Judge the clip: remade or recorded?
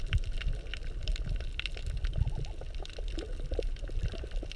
recorded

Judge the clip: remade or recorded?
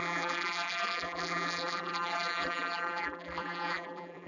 remade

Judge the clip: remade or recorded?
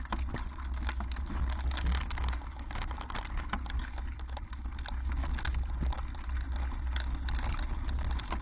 recorded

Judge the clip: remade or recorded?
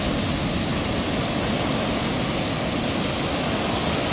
recorded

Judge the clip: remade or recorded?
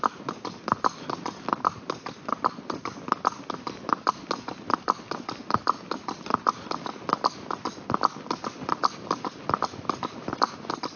recorded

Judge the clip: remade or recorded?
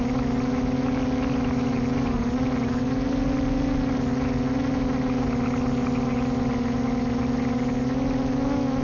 recorded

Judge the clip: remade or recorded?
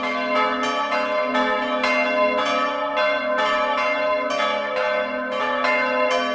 recorded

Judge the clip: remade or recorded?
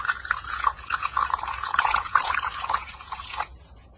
remade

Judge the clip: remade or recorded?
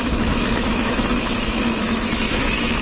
remade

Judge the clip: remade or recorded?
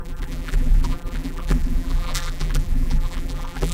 remade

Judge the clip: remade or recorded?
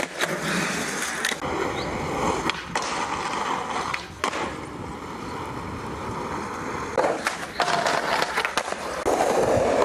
recorded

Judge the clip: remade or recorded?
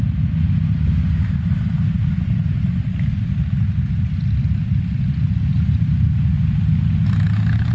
recorded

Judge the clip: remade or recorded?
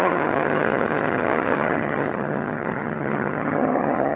remade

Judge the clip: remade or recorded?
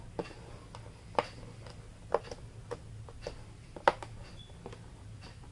recorded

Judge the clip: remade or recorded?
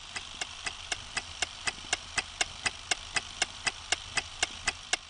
recorded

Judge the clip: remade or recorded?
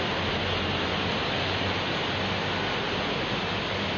recorded